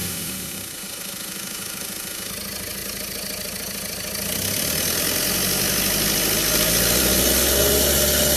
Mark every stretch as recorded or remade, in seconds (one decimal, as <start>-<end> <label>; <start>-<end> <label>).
0.0-2.3 remade; 2.3-8.4 recorded